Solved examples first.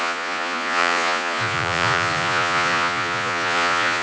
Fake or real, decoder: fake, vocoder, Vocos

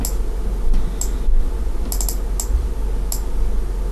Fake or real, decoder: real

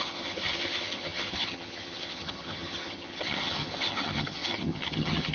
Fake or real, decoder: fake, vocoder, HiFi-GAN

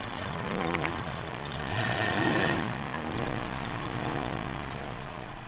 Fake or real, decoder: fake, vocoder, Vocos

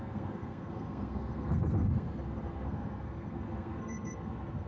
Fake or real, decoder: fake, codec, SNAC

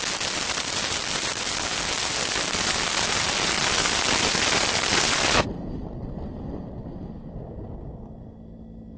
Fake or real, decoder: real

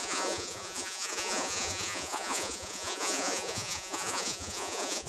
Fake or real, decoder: fake, vocoder, Vocos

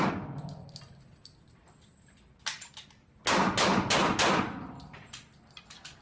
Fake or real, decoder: real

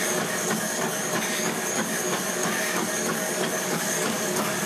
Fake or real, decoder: fake, codec, DAC